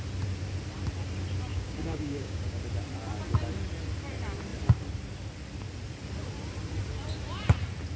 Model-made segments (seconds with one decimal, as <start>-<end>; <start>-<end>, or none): 1.5-2.6